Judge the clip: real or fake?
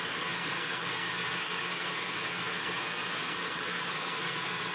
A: fake